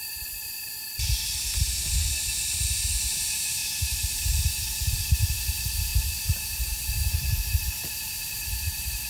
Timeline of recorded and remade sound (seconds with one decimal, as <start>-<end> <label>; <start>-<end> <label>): 0.0-3.6 recorded; 3.6-5.3 remade; 5.3-5.9 recorded; 5.9-7.3 remade; 7.3-9.1 recorded

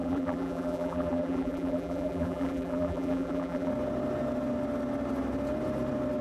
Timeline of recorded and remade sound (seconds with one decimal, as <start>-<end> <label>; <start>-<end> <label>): 0.0-3.7 remade; 3.7-6.2 recorded